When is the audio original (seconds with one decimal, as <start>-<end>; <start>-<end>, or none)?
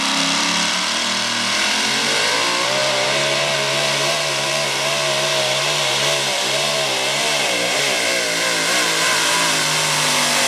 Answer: 0.0-2.8; 7.8-10.5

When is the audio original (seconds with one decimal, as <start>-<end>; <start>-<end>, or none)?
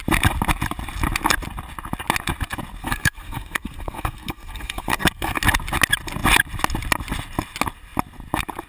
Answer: 0.0-2.8; 5.4-8.7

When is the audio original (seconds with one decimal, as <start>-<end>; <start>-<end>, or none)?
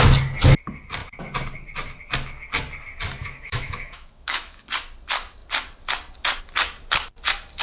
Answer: 0.0-3.2; 4.6-7.6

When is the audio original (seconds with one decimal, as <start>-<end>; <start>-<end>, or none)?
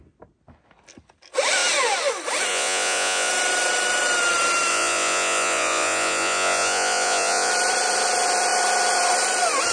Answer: 0.0-2.5; 3.3-4.7; 7.5-9.7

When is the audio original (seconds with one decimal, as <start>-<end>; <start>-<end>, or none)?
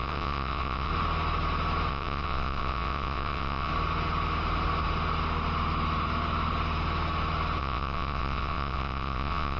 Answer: 0.9-1.9; 3.7-7.6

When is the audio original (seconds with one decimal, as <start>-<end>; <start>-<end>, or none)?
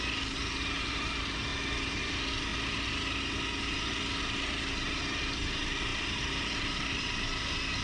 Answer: 0.0-7.8